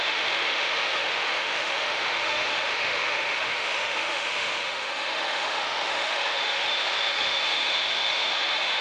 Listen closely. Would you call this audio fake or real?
fake